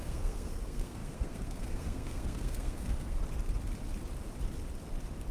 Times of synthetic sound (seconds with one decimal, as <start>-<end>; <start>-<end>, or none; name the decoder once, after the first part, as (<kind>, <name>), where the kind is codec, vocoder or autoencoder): 0.0-3.2 (codec, SNAC)